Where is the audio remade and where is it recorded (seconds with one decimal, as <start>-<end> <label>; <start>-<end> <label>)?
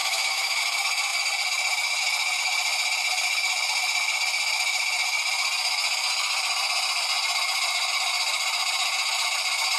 0.0-0.6 remade; 0.6-9.8 recorded